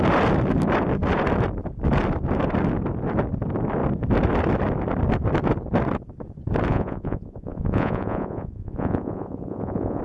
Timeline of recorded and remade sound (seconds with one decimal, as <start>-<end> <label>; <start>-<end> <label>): 0.0-6.7 recorded; 6.7-10.0 remade